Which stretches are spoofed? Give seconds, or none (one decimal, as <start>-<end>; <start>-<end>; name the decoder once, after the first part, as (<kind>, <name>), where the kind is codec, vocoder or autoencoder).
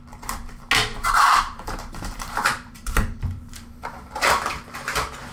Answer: 0.9-3.7 (vocoder, BigVGAN v2)